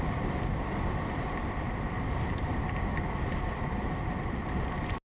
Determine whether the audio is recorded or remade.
recorded